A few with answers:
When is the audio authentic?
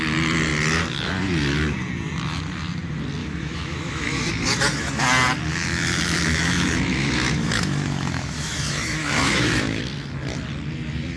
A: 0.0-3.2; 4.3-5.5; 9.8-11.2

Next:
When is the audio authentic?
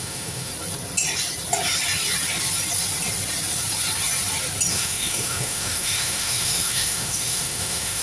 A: 0.5-4.7